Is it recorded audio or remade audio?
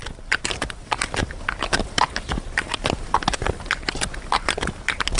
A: recorded